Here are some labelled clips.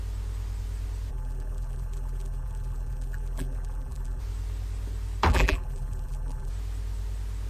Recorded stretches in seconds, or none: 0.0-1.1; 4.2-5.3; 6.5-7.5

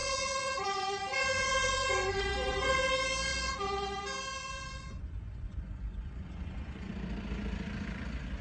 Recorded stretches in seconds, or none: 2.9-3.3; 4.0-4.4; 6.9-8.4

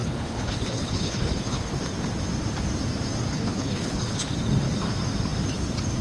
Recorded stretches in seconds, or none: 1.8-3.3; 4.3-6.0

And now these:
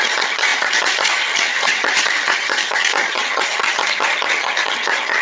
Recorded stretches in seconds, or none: none